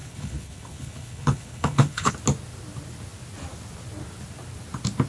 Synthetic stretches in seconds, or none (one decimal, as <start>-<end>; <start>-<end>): 0.0-2.1